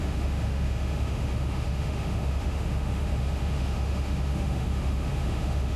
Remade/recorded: remade